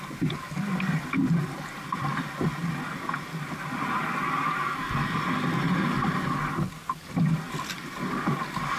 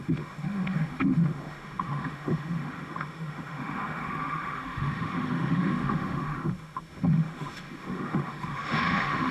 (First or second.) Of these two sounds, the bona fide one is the first